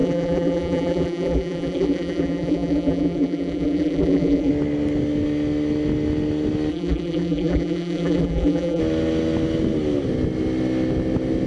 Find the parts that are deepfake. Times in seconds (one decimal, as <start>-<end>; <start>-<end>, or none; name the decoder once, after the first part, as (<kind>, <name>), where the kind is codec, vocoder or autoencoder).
0.0-4.5 (vocoder, BigVGAN v2); 6.7-8.8